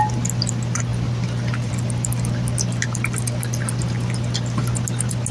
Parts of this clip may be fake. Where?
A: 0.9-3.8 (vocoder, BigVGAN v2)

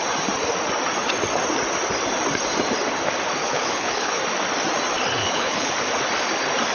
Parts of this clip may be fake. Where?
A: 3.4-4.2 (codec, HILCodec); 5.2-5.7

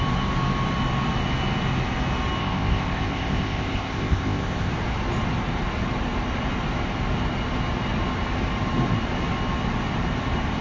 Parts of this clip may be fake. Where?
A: 2.4-4.7 (codec, ZipCodec)

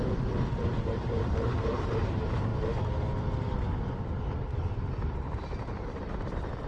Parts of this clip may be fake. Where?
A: 0.0-2.5 (vocoder, BigVGAN v2); 3.5-6.7

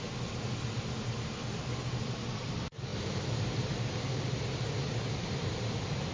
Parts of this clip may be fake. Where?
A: none